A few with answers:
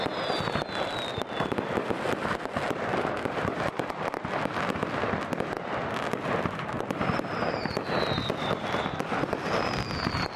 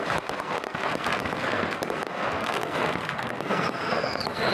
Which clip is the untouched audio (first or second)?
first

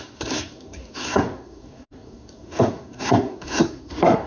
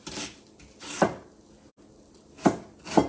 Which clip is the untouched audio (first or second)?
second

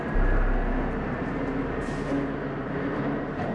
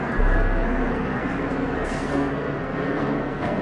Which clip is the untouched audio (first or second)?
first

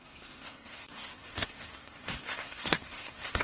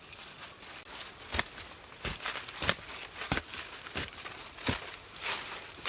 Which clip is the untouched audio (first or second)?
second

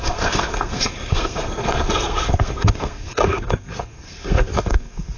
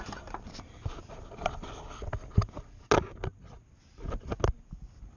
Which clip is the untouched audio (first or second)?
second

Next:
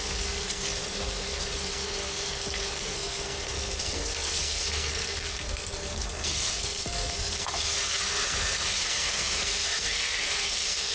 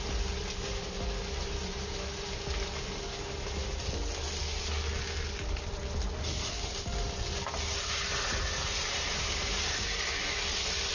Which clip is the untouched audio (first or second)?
second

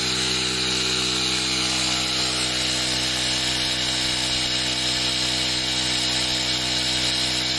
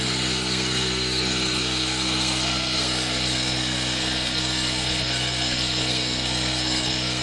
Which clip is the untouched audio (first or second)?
first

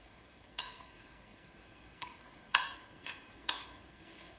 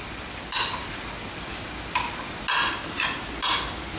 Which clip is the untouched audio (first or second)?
second